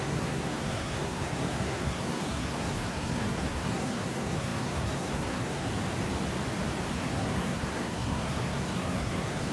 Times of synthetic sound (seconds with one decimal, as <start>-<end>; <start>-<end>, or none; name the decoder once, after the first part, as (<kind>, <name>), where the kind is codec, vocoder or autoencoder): 0.0-5.7 (codec, SNAC); 6.9-9.5